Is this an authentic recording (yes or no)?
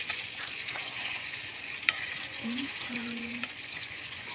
no